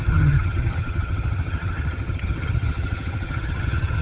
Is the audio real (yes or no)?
no